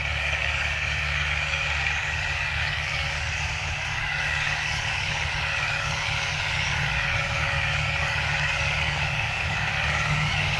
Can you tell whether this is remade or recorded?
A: remade